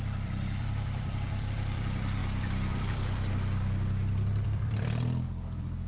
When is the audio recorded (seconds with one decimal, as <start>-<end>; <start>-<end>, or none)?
none